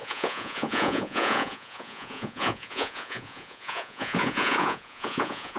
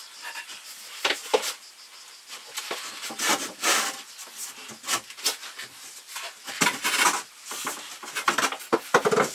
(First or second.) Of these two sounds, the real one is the second